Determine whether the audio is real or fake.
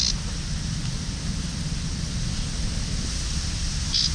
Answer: real